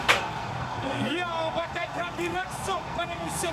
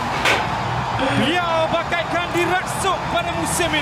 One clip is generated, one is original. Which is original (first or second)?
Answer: second